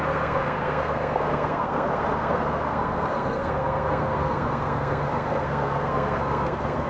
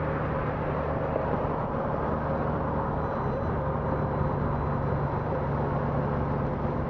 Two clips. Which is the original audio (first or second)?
second